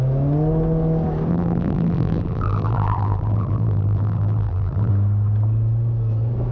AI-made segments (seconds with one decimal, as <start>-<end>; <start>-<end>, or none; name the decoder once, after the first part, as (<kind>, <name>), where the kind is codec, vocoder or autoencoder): 1.3-4.9 (vocoder, BigVGAN v2)